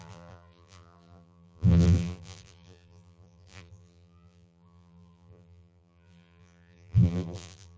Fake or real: fake